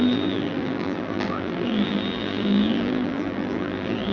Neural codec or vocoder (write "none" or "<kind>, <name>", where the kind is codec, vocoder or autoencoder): vocoder, BigVGAN v2